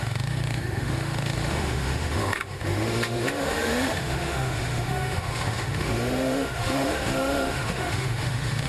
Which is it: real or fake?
fake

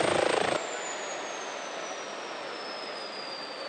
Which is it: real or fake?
real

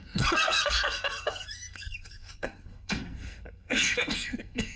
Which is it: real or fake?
fake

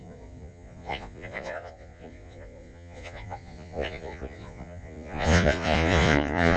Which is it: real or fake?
fake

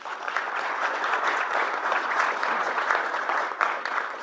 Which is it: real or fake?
fake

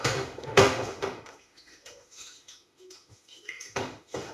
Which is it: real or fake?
fake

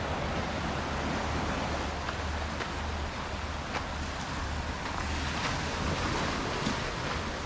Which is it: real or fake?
real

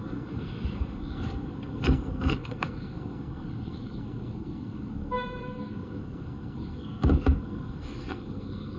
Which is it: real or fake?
fake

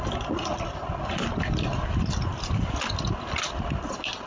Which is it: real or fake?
real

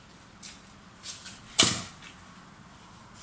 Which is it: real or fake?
real